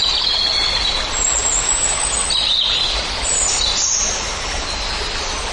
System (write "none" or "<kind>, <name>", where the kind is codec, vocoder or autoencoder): none